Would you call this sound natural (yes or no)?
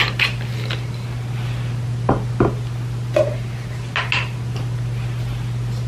yes